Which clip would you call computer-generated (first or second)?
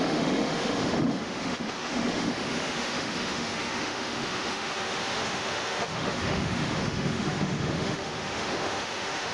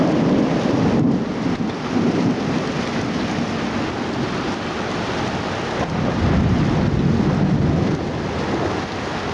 first